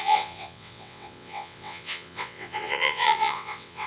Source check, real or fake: fake